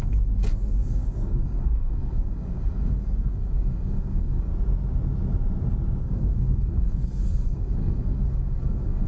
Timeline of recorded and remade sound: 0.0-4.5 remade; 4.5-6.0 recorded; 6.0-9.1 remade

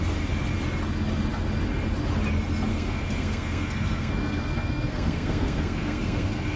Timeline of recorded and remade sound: 0.0-2.7 recorded; 2.7-6.6 remade

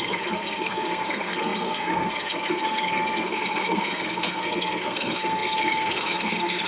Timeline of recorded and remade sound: 0.0-6.7 remade

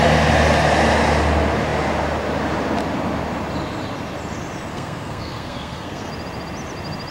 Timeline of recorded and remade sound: 0.0-4.7 recorded; 4.7-6.1 remade; 6.1-7.1 recorded

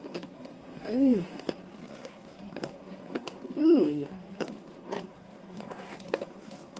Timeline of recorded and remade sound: 0.0-6.8 remade

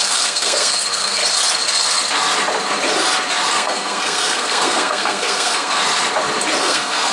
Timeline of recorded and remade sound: 0.0-1.2 remade; 1.2-3.5 recorded; 3.5-5.8 remade; 5.8-6.6 recorded; 6.6-7.1 remade

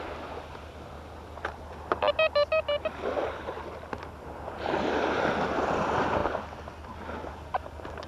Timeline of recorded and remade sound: 0.0-8.1 recorded

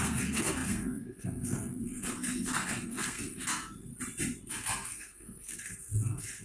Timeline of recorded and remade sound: 0.0-3.9 remade; 3.9-4.5 recorded; 4.5-6.4 remade